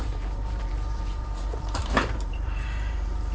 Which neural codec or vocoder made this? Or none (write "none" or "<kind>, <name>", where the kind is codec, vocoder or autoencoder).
vocoder, BigVGAN v2